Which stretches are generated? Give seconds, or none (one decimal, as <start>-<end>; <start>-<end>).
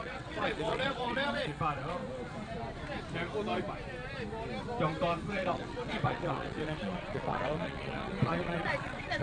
0.0-2.0; 5.3-9.2